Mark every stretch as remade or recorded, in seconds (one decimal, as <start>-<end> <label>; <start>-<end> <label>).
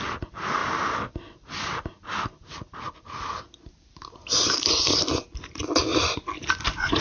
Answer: 0.0-7.0 recorded